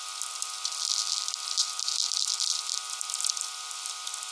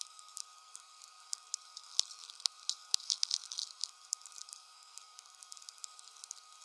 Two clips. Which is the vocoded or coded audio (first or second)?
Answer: second